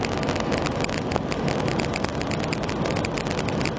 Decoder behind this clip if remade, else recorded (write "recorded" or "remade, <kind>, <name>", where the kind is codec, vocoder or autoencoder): recorded